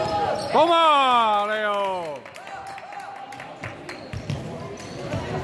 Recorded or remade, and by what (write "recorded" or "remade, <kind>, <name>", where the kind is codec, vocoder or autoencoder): recorded